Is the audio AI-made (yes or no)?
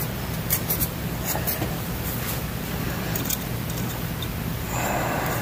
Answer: yes